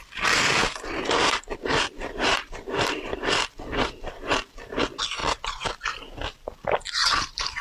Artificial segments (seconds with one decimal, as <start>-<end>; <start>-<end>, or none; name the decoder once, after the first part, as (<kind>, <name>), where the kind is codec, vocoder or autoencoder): 0.6-4.8 (vocoder, BigVGAN v2); 5.2-5.8; 7.0-7.6